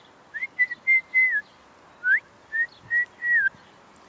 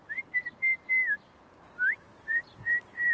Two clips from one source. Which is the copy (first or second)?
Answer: second